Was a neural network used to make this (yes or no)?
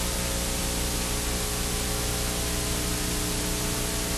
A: no